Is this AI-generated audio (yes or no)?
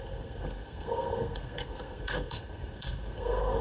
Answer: yes